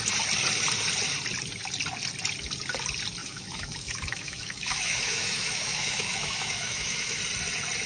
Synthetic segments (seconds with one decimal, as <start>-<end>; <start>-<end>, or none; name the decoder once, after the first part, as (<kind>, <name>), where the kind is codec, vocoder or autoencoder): 3.2-7.2 (autoencoder, DAC-VAE)